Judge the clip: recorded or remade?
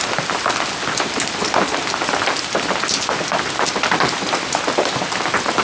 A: recorded